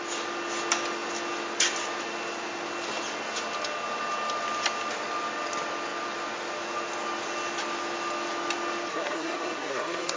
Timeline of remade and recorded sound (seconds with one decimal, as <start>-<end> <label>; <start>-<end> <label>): 0.0-8.9 recorded; 8.9-10.2 remade